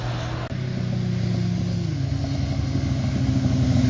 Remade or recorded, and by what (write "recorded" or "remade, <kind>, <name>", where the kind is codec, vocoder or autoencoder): recorded